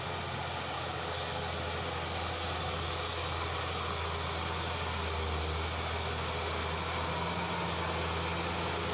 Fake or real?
real